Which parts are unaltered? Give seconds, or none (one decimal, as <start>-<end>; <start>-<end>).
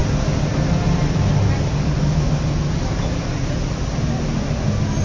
0.0-5.0